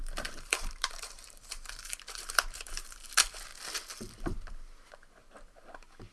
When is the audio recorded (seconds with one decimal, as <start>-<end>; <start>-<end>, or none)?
3.5-4.5; 5.2-6.1